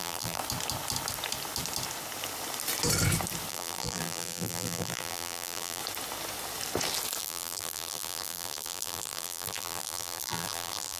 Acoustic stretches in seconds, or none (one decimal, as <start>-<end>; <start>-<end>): 0.4-3.5; 5.8-7.2